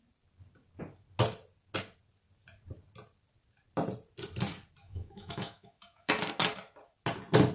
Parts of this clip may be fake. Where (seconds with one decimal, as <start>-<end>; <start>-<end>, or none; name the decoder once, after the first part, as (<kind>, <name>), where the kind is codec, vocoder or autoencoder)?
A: 4.8-6.1 (autoencoder, DAC-VAE)